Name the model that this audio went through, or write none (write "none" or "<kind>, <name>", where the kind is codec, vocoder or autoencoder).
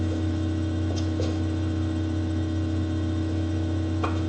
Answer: autoencoder, DAC-VAE